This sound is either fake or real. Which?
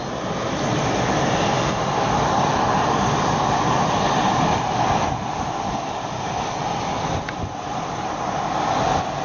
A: real